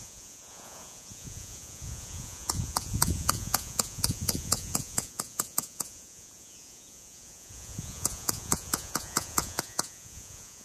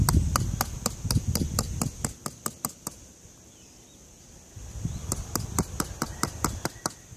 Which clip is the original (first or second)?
second